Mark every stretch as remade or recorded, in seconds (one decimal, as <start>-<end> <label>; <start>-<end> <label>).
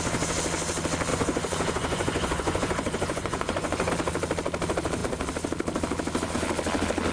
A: 0.0-1.1 recorded; 1.1-3.9 remade; 3.9-7.1 recorded